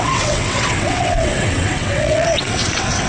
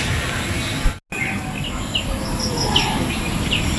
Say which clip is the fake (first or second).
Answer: first